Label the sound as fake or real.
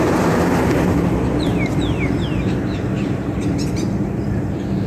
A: fake